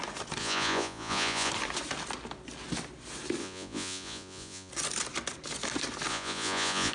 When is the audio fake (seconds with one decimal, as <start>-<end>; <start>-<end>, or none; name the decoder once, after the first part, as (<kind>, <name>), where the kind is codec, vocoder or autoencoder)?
0.4-1.5 (vocoder, Vocos); 3.4-4.7; 6.1-6.9